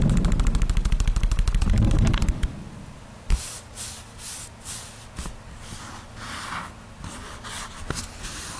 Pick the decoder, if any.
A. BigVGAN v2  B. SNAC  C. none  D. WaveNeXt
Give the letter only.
C